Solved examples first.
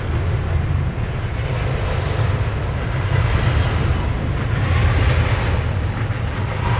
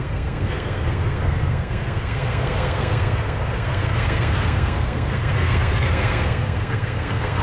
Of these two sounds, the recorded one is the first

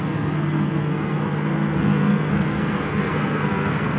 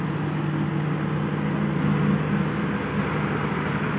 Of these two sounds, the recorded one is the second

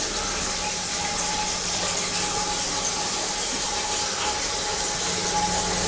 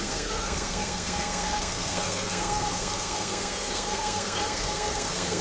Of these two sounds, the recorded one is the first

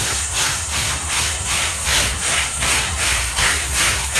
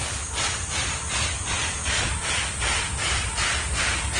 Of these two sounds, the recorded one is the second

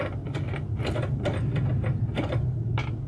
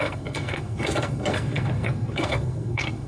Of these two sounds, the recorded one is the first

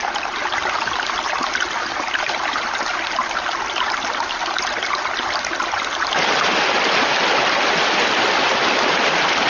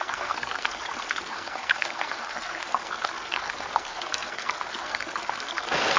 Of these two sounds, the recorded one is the first